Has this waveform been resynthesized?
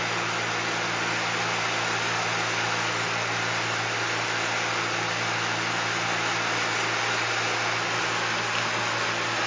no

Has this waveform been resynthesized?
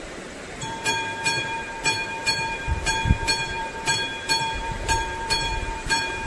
yes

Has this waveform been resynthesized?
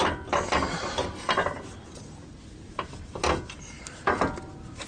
no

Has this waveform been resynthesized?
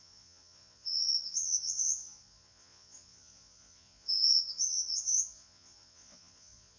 yes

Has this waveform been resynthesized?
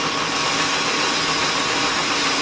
no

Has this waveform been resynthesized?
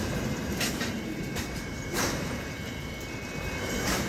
yes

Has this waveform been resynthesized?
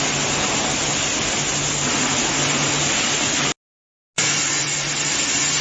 no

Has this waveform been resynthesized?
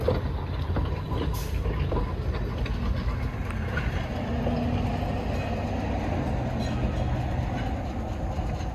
no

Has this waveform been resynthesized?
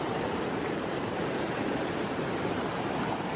yes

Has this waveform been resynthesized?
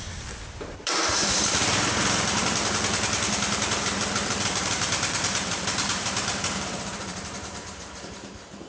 yes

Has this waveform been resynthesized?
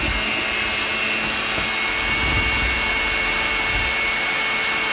no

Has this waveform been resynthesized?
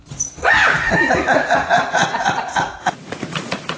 yes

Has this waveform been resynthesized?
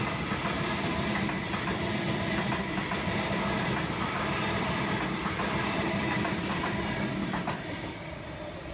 no